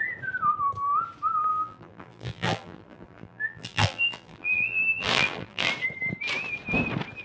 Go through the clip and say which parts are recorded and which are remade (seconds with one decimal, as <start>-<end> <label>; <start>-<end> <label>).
0.0-1.5 recorded; 1.5-5.7 remade; 5.7-7.2 recorded